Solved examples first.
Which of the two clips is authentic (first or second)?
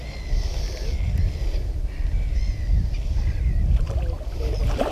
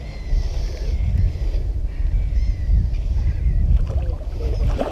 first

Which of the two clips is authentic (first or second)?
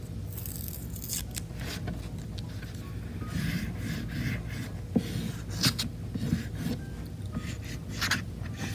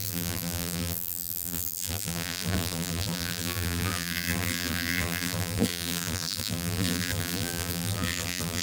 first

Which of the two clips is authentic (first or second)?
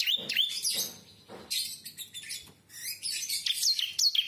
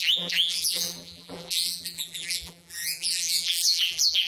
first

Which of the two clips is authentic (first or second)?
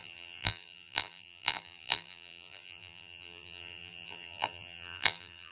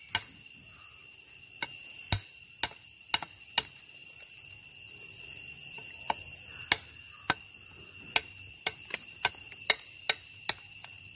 second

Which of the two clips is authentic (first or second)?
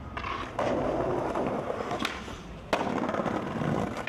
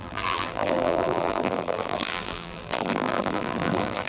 first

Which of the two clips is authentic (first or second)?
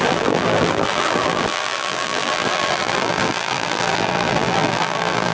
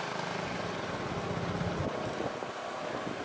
second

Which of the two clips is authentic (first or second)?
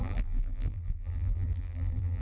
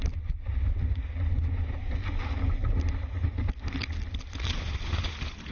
second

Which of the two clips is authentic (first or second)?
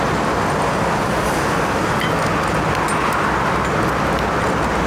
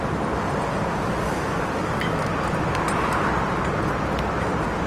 first